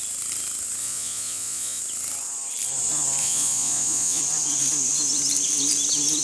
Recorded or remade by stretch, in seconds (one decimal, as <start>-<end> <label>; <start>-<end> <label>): 0.0-0.8 recorded; 0.8-1.8 remade; 1.8-3.2 recorded; 3.2-4.2 remade; 4.2-6.2 recorded